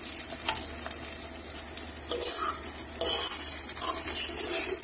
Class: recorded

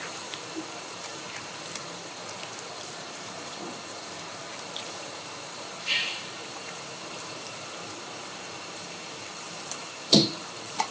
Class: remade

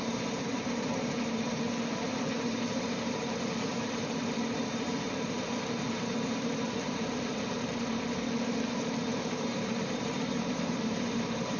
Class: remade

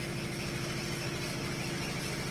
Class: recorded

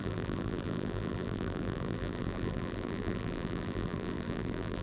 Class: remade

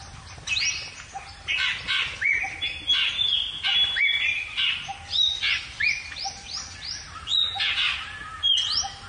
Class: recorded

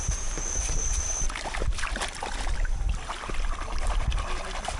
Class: remade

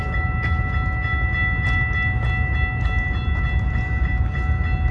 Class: recorded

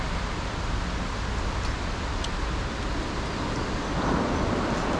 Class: recorded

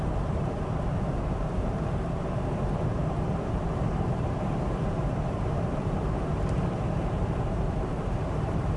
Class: remade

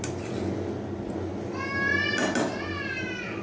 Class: recorded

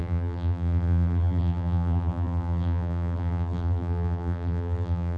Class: remade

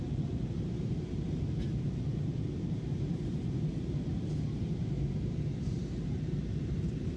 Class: remade